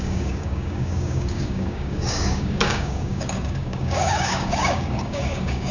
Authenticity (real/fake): fake